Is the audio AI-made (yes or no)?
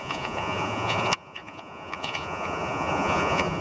yes